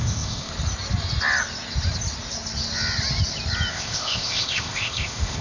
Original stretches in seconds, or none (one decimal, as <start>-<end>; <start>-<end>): 0.5-3.7